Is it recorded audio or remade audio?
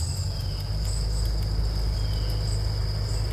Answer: recorded